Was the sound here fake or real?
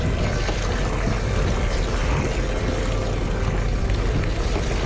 real